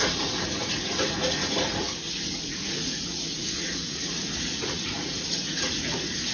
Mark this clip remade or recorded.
remade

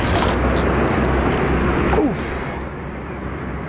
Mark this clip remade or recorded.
recorded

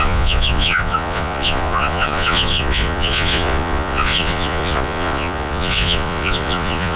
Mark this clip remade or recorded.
remade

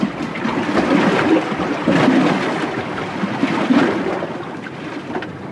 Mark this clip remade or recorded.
recorded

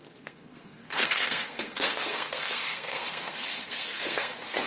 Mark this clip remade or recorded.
remade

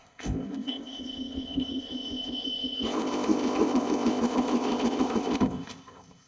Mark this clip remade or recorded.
remade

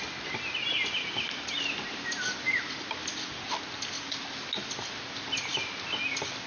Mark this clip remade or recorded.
recorded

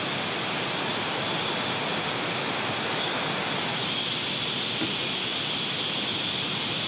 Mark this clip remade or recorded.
recorded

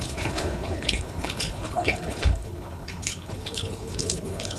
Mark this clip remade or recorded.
remade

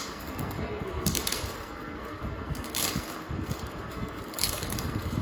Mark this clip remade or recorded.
remade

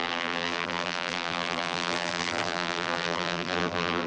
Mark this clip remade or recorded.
remade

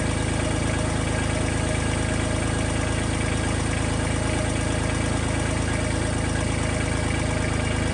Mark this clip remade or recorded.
recorded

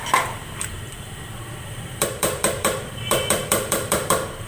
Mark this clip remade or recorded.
remade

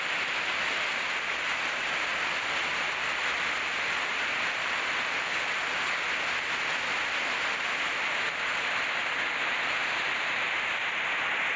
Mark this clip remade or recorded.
recorded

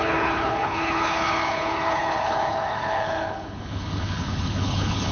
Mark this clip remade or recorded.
remade